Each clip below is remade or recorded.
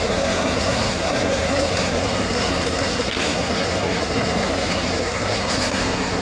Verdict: remade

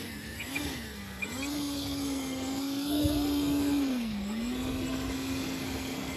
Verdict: remade